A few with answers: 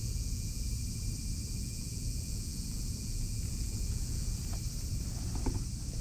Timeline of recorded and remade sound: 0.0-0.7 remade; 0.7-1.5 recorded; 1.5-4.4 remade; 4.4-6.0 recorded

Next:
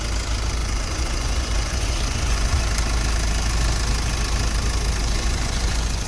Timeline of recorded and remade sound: 0.0-0.6 recorded; 0.6-2.6 remade; 2.6-5.0 recorded; 5.0-6.1 remade

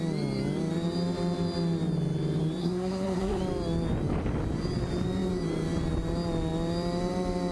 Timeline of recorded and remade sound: 0.0-2.6 recorded; 2.6-3.4 remade; 3.4-7.5 recorded

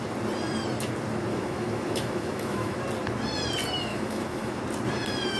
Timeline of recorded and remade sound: 0.0-1.3 recorded; 1.3-2.8 remade; 2.8-3.9 recorded; 3.9-4.6 remade; 4.6-5.4 recorded

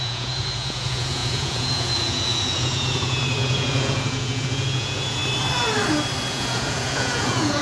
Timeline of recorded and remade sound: 0.0-5.2 remade; 5.2-6.3 recorded; 6.3-7.6 remade

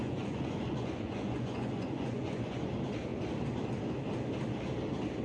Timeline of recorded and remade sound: 0.0-2.7 remade; 2.7-5.2 recorded